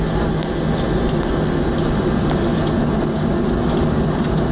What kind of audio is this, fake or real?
real